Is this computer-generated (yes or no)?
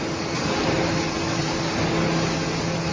no